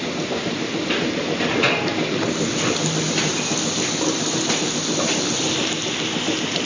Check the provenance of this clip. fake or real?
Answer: real